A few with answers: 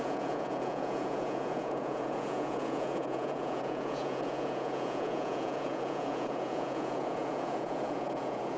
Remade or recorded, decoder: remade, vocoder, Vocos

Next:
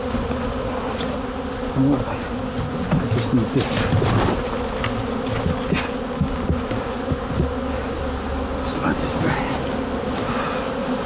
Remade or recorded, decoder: recorded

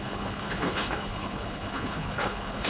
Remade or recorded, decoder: remade, codec, HILCodec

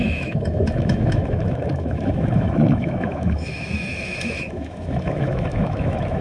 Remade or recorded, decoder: remade, autoencoder, DAC-VAE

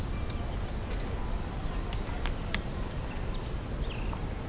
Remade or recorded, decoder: recorded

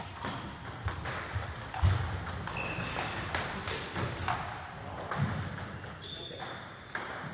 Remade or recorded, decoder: recorded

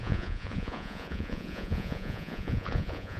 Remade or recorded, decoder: remade, vocoder, Vocos